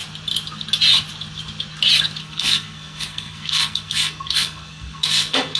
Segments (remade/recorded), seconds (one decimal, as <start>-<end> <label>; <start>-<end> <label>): 0.0-2.2 recorded; 2.2-5.6 remade